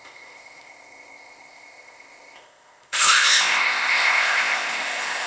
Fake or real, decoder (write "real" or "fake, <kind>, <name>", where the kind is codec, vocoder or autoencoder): fake, codec, ZipCodec